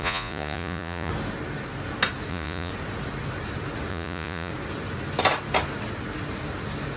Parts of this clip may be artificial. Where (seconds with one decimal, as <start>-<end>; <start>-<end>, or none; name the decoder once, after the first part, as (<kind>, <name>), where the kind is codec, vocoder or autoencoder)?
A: 0.0-1.1 (vocoder, Vocos); 2.3-2.7; 3.9-4.5